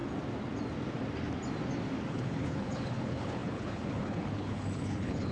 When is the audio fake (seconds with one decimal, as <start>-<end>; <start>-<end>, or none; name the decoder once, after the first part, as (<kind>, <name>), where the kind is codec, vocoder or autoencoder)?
2.1-5.3 (codec, HILCodec)